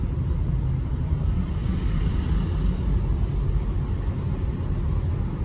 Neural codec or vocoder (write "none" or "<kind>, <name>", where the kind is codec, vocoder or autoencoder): none